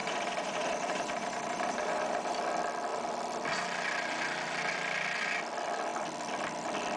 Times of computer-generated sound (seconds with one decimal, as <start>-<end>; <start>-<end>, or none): 0.0-2.4